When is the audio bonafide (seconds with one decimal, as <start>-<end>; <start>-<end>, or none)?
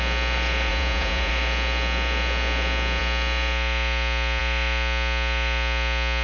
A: 0.0-0.7; 1.3-6.2